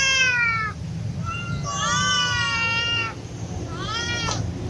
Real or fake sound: real